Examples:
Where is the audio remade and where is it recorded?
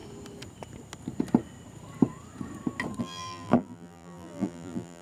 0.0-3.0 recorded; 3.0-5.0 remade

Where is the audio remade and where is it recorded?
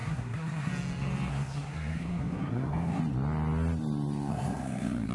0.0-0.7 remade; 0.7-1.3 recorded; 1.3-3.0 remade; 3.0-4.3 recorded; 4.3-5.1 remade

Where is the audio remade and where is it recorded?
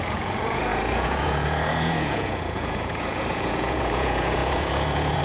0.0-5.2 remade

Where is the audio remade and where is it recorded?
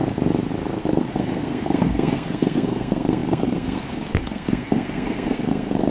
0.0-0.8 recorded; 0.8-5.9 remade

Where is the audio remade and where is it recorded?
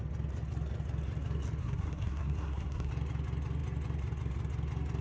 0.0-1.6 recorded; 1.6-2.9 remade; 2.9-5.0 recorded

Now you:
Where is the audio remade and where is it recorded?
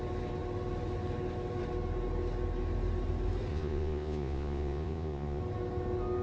0.0-3.5 recorded; 3.5-5.4 remade; 5.4-6.2 recorded